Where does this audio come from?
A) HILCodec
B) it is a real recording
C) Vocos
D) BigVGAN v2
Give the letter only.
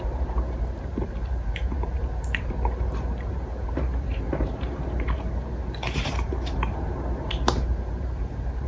D